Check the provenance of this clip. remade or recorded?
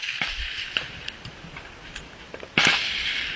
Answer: recorded